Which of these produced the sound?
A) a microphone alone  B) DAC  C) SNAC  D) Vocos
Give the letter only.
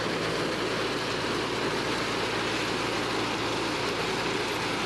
A